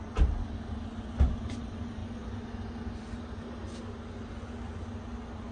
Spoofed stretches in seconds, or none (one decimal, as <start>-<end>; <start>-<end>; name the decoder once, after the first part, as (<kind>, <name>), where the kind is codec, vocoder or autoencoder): none